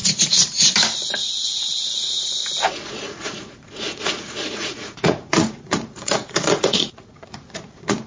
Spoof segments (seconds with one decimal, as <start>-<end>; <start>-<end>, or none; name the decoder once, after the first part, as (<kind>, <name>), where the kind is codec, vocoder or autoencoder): 2.0-2.4 (vocoder, Vocos); 2.9-8.1

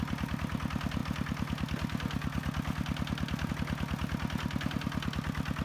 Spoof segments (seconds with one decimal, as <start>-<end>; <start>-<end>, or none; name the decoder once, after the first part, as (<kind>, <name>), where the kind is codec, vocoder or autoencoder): none

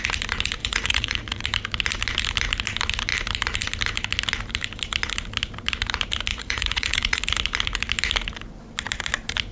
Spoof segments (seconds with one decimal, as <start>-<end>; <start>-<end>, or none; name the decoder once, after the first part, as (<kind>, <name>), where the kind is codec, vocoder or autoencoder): 0.6-1.4 (vocoder, Vocos); 6.3-7.2

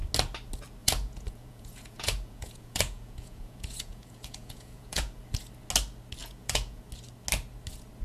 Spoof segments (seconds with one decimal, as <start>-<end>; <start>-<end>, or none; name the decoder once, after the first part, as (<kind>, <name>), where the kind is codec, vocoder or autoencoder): 0.8-5.2 (vocoder, Vocos); 6.2-6.8

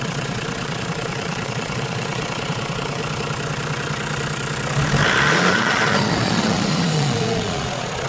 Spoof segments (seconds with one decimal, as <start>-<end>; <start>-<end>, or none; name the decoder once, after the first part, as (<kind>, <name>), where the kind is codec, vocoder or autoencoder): 0.0-3.0 (vocoder, Vocos); 5.5-8.1